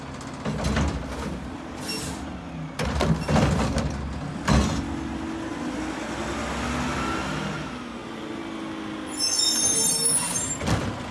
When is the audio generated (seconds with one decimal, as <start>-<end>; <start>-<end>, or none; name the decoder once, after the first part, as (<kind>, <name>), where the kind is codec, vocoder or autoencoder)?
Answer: none

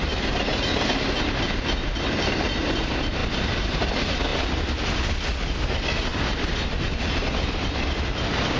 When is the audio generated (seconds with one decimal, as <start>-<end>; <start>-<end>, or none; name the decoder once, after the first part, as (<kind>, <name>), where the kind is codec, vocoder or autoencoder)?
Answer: 6.1-8.6 (vocoder, BigVGAN v2)

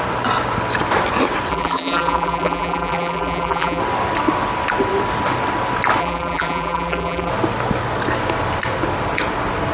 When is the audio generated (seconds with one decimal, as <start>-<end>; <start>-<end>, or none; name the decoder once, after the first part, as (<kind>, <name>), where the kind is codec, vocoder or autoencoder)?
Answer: 1.5-3.8 (vocoder, BigVGAN v2); 6.0-7.3

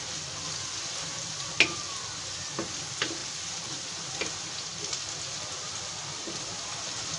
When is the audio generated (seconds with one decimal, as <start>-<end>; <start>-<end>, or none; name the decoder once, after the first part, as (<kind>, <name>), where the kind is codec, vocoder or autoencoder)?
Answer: 3.2-7.2 (vocoder, BigVGAN v2)

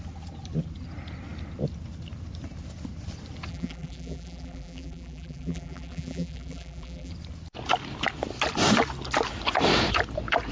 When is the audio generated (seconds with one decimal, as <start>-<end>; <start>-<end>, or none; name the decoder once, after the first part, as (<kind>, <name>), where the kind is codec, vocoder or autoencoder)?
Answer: 3.5-7.1 (vocoder, BigVGAN v2)

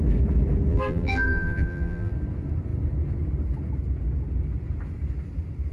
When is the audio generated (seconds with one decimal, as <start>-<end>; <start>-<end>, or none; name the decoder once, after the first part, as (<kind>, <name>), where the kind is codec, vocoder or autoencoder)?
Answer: 0.7-2.1 (vocoder, BigVGAN v2)

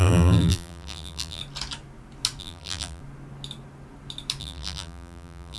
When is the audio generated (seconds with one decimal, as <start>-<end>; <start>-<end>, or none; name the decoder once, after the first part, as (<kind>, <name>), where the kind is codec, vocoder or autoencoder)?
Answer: 0.0-1.4 (vocoder, BigVGAN v2); 2.4-3.0; 4.4-5.6

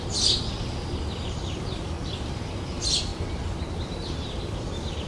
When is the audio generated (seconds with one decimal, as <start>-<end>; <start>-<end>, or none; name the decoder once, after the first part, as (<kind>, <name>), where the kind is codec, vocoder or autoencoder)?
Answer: 0.0-3.1 (vocoder, BigVGAN v2); 3.9-5.1